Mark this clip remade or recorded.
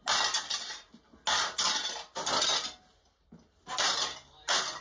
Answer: recorded